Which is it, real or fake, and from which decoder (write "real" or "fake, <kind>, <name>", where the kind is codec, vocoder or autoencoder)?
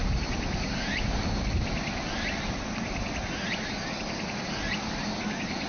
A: real